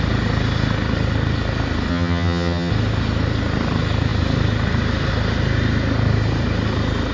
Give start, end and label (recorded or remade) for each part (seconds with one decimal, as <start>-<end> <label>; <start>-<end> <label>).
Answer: 0.0-1.9 recorded; 1.9-2.7 remade; 2.7-7.1 recorded